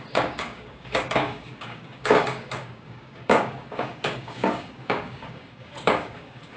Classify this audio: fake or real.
fake